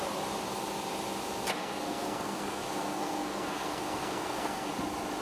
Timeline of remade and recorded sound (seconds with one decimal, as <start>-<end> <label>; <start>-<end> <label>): 0.0-1.6 recorded; 1.6-4.7 remade; 4.7-5.2 recorded